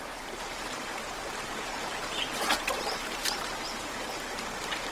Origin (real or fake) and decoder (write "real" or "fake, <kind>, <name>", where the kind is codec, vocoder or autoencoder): fake, vocoder, BigVGAN v2